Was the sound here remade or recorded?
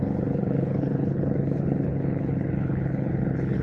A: remade